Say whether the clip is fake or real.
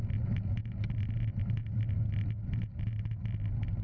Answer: real